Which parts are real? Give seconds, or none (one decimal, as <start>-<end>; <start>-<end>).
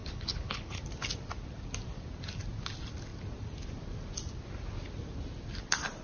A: 0.8-6.0